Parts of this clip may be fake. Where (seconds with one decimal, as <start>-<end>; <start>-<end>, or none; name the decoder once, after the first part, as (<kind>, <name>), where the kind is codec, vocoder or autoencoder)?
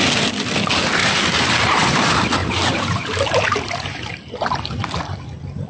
1.0-2.0 (vocoder, BigVGAN v2); 2.4-4.3